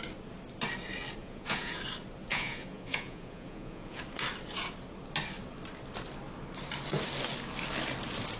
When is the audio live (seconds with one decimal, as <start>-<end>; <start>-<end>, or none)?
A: 0.0-1.2; 1.8-2.3; 4.0-8.4